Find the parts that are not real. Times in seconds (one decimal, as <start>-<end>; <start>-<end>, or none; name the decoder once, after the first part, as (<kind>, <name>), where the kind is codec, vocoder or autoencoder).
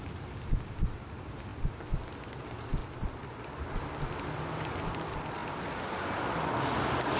none